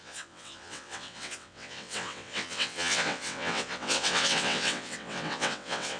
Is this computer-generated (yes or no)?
yes